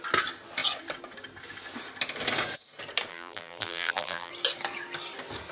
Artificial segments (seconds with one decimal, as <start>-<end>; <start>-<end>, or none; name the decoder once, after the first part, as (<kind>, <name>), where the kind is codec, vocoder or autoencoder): 3.1-4.3 (vocoder, BigVGAN v2)